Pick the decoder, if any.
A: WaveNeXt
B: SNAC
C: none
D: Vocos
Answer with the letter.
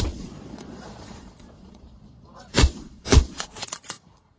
D